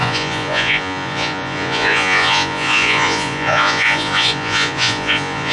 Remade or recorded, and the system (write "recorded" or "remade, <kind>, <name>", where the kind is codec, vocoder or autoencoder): remade, vocoder, Vocos